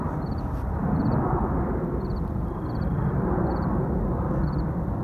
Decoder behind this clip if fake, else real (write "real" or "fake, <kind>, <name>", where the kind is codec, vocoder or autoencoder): real